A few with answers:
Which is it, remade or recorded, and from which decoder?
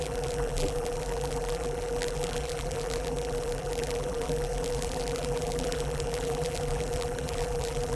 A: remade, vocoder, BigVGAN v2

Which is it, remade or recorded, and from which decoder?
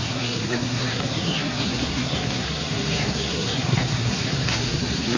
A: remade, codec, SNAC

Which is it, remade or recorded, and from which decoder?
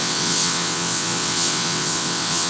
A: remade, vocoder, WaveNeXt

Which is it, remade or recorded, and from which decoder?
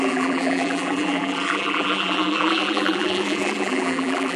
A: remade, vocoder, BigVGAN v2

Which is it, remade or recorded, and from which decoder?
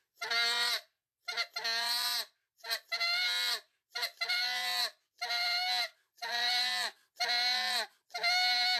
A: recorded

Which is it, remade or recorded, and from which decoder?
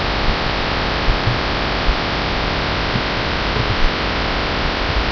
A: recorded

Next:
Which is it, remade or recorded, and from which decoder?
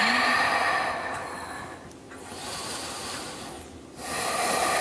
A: recorded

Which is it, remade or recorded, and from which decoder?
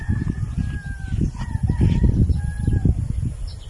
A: recorded